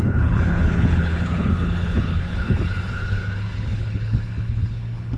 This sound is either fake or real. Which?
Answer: fake